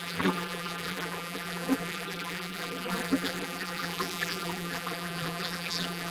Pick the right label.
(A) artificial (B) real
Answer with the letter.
A